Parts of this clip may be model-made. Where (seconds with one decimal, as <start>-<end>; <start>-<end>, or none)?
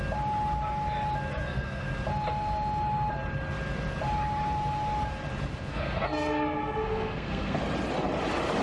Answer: 1.3-1.9; 5.7-7.6